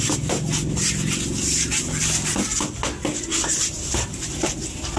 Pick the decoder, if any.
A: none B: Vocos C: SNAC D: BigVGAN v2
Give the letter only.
A